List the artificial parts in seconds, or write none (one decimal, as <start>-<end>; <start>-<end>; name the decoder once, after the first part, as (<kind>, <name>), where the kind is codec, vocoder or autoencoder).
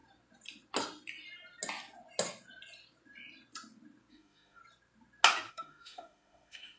4.1-4.6 (autoencoder, DAC-VAE); 5.5-6.8